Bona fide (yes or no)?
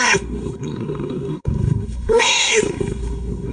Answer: no